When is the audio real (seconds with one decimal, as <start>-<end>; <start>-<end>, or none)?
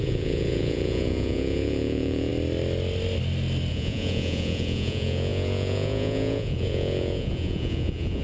2.3-3.7